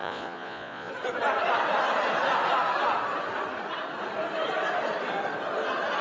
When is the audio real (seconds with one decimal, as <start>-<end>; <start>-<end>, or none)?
0.9-6.0